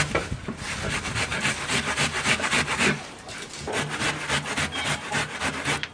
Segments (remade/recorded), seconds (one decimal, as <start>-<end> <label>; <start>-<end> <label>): 0.0-1.3 recorded; 1.3-3.5 remade; 3.5-5.9 recorded